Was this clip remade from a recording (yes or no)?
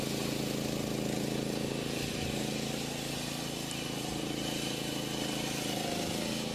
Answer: no